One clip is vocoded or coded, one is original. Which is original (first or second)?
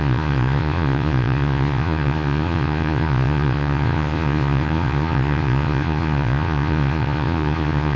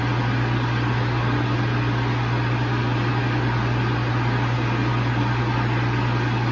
second